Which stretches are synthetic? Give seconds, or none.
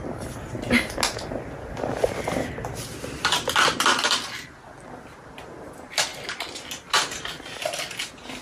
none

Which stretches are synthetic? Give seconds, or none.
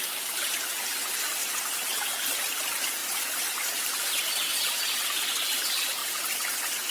0.0-1.4 (vocoder, BigVGAN v2); 2.6-6.0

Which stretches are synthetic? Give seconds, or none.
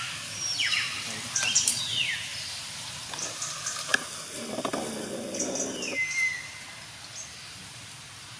0.0-2.3 (vocoder, BigVGAN v2); 2.9-3.9; 7.4-8.4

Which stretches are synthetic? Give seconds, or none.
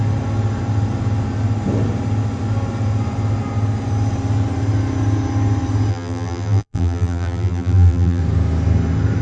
5.9-8.2 (vocoder, BigVGAN v2)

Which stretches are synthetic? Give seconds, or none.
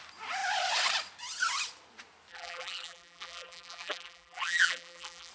2.3-5.3 (vocoder, BigVGAN v2)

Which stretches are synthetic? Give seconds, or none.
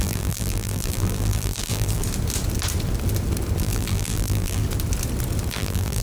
0.0-2.0 (vocoder, BigVGAN v2); 3.6-4.6; 5.5-6.0